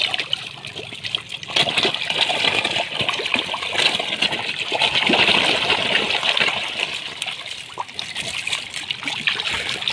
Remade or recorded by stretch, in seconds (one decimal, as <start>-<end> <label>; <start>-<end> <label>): 0.0-9.9 recorded